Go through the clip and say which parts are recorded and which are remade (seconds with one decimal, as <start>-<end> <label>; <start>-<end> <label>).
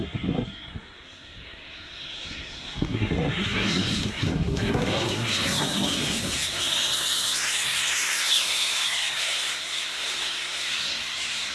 0.0-11.5 remade